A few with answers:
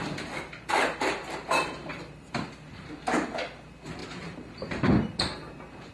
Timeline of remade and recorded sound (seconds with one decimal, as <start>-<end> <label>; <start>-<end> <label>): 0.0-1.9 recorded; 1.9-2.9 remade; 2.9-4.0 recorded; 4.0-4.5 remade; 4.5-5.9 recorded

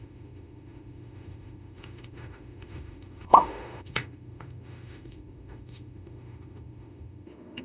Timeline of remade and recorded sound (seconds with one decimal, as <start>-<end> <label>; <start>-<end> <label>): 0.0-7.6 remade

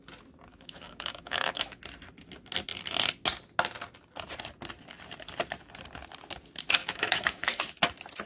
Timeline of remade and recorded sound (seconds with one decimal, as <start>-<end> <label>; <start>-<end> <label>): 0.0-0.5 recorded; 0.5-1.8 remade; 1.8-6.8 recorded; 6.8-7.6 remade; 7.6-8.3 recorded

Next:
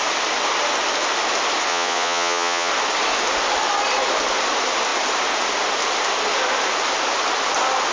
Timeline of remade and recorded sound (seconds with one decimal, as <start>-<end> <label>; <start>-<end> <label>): 0.0-1.7 recorded; 1.7-2.7 remade; 2.7-7.9 recorded